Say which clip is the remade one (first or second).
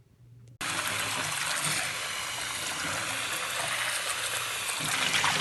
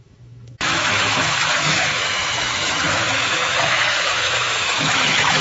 second